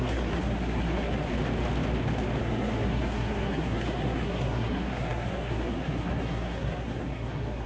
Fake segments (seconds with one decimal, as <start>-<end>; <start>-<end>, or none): 0.0-1.3; 2.4-7.7